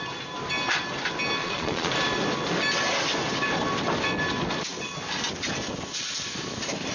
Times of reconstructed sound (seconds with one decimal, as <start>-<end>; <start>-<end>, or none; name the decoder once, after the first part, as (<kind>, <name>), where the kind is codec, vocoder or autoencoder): 1.4-1.9 (vocoder, Vocos)